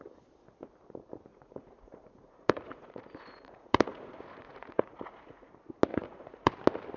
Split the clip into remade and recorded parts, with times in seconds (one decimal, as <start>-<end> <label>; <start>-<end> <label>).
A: 0.0-1.3 recorded; 1.3-5.5 remade; 5.5-5.9 recorded; 5.9-6.5 remade; 6.5-7.0 recorded